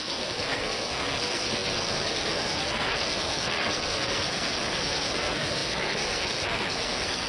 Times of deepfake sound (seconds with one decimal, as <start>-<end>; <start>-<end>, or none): 0.0-7.3